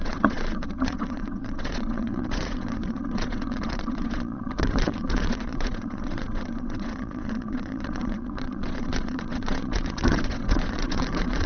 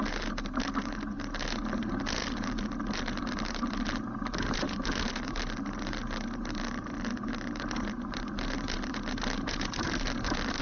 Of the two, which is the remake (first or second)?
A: first